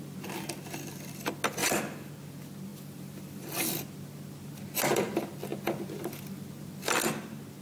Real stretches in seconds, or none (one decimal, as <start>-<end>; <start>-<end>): 0.0-1.6; 2.1-2.7; 3.7-7.6